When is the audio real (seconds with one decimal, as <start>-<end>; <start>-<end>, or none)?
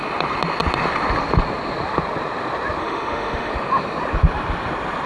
0.0-2.8; 3.5-5.1